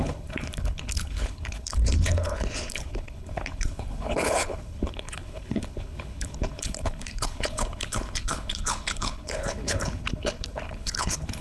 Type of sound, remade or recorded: remade